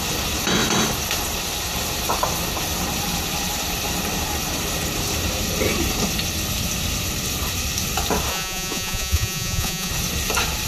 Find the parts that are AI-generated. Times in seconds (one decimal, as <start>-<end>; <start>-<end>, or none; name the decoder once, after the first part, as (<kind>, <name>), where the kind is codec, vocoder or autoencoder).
8.3-9.9 (vocoder, Vocos)